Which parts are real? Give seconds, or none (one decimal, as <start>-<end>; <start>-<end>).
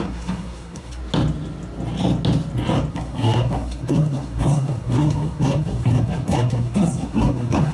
1.0-2.9